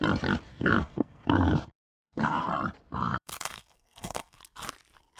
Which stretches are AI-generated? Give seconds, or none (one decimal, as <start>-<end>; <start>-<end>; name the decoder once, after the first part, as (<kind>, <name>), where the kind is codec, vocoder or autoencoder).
0.5-2.5 (codec, SNAC); 2.9-4.4